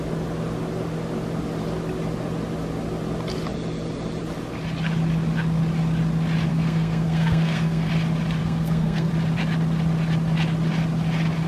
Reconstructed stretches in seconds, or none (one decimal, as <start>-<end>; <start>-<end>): 6.5-7.9; 8.4-9.1